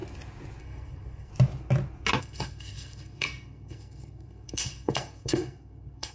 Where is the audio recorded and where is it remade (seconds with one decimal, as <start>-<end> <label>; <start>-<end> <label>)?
0.0-0.6 recorded; 0.6-1.3 remade; 1.3-2.2 recorded; 2.2-6.1 remade